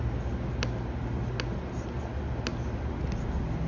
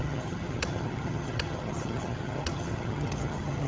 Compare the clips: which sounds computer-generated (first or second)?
second